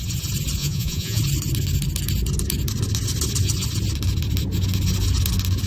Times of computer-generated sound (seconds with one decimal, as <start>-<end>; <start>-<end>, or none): 0.6-1.2